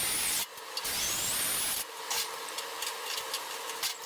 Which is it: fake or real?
real